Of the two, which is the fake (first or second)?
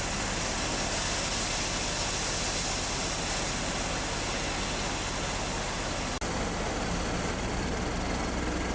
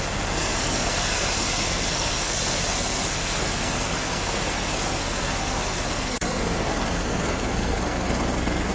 second